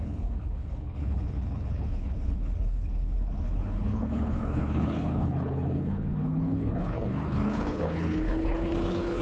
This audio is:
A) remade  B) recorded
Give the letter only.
A